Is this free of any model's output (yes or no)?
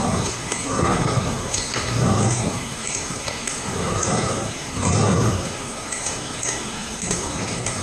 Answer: no